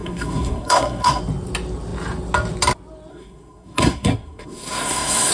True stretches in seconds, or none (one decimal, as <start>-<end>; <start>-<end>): 1.2-3.1